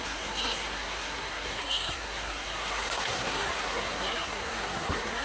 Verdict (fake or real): fake